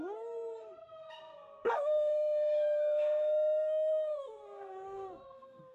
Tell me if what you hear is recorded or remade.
remade